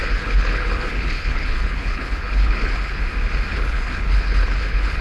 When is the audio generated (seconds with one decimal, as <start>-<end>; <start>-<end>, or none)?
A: 0.0-3.0; 3.5-5.0